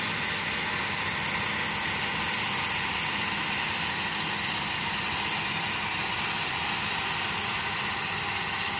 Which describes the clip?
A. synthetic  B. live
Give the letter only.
B